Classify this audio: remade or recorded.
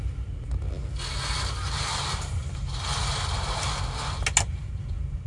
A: recorded